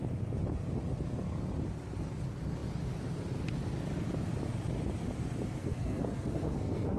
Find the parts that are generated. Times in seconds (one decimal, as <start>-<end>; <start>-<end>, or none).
5.6-7.0